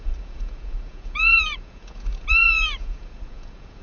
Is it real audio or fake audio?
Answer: fake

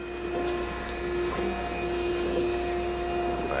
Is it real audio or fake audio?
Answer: real